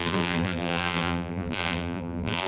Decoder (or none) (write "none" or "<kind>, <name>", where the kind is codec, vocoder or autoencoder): vocoder, BigVGAN v2